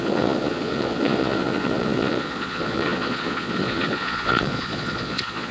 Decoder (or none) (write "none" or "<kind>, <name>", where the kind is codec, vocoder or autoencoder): vocoder, Vocos